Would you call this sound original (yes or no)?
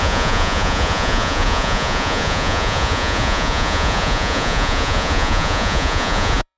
no